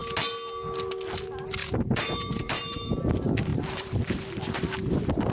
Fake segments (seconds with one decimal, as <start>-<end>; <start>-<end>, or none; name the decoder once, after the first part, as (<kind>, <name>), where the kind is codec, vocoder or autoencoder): 1.6-2.9 (vocoder, BigVGAN v2); 3.5-4.3